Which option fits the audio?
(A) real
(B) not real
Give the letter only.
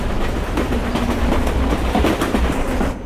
A